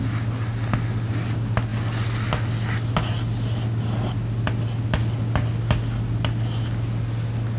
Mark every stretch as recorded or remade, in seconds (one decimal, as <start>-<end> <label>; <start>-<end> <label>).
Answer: 0.0-7.6 recorded